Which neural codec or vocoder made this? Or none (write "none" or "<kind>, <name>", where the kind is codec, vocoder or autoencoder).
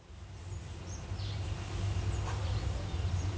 none